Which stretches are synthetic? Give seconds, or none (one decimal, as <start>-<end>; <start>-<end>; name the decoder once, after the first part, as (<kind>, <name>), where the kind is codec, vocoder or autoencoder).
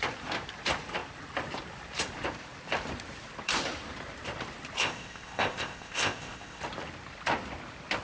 4.8-6.6 (codec, ZipCodec)